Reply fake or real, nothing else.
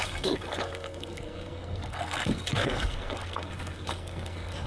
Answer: fake